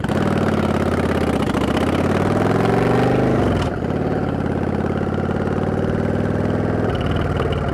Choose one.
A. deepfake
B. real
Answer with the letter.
B